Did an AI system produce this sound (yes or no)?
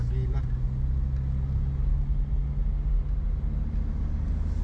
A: no